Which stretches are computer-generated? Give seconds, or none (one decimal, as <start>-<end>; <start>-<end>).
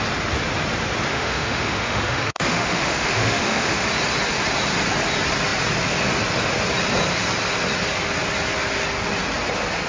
1.1-3.8